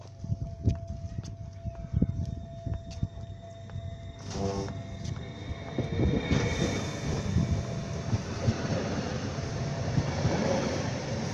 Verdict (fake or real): real